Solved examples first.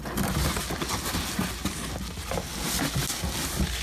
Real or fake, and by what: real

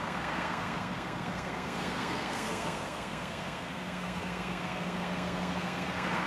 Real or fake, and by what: fake, codec, SNAC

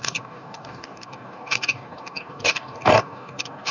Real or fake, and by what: fake, codec, DAC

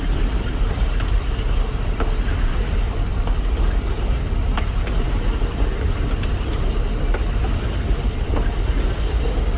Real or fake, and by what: real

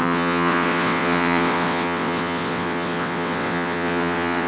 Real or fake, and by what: fake, vocoder, WaveNeXt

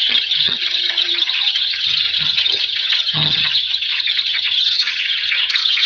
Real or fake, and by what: fake, vocoder, HiFi-GAN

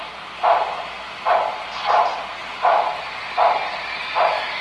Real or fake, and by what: real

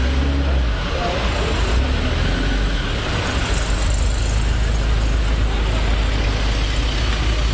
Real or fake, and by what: real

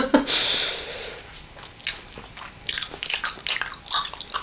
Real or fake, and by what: real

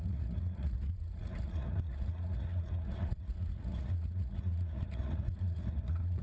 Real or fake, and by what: fake, vocoder, Vocos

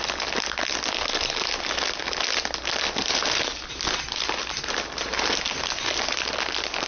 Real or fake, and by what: real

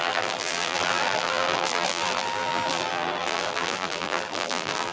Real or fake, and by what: fake, vocoder, BigVGAN v2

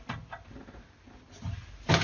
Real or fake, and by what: real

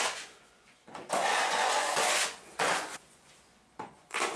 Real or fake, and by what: fake, vocoder, Vocos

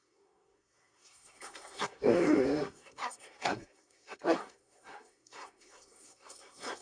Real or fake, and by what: fake, codec, SNAC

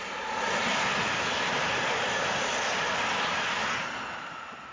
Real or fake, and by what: real